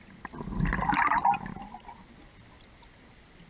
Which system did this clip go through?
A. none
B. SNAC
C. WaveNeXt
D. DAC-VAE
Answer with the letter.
A